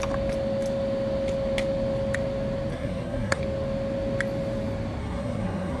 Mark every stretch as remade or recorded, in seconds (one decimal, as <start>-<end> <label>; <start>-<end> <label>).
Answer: 0.0-2.7 recorded; 2.7-3.4 remade; 3.4-5.0 recorded; 5.0-5.8 remade